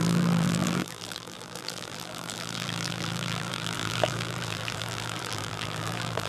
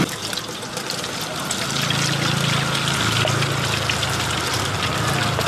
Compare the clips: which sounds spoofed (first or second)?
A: first